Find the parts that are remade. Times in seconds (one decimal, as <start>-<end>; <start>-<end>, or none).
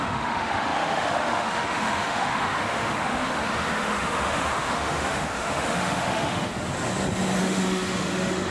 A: 0.0-6.5; 7.4-8.5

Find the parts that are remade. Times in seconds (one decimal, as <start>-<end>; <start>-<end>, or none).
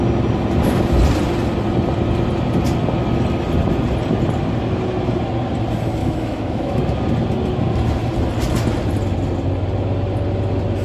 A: 6.0-6.8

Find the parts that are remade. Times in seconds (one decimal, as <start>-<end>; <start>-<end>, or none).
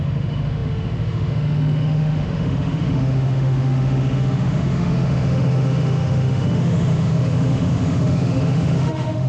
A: 0.0-9.3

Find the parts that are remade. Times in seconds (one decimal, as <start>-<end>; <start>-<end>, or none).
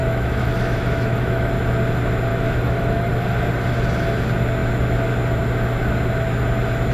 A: 0.0-1.5; 2.3-3.1